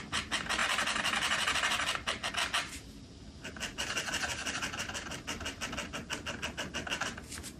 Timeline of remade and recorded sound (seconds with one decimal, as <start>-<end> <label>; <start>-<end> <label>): 0.0-7.6 recorded